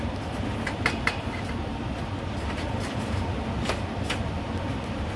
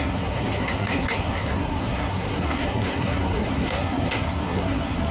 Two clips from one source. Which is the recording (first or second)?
first